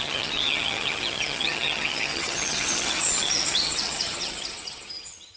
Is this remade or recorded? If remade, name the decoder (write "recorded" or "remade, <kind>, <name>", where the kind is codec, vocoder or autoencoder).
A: remade, vocoder, HiFi-GAN